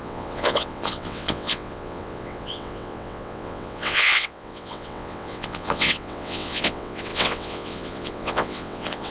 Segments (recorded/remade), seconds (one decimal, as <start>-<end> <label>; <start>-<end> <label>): 0.0-9.1 remade